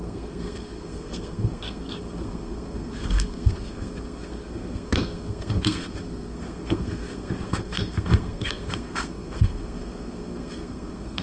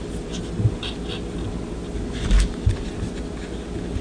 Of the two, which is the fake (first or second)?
first